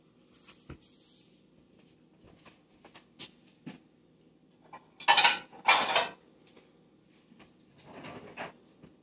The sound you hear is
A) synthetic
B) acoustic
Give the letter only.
B